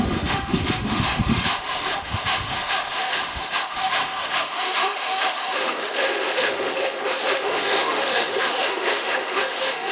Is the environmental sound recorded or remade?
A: remade